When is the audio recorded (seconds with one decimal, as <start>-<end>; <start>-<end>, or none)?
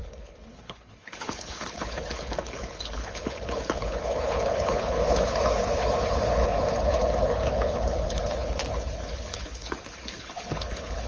none